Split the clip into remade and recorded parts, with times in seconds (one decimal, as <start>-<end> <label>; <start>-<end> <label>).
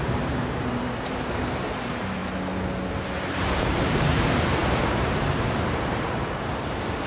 0.0-2.2 remade; 2.2-2.9 recorded; 2.9-7.1 remade